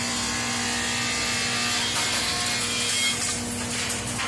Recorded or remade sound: recorded